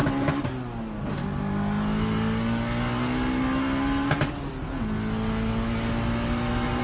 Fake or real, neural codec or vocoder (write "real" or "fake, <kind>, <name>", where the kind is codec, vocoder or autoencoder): real